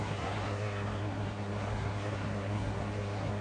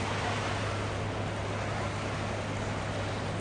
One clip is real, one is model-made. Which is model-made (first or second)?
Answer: first